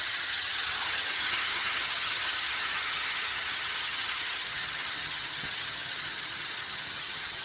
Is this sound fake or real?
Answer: fake